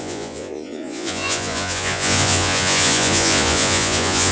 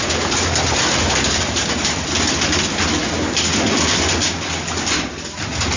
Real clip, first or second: second